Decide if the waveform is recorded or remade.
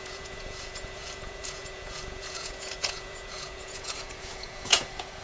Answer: remade